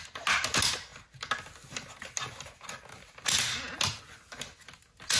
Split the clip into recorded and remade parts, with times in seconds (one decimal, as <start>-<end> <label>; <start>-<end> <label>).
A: 0.0-5.2 recorded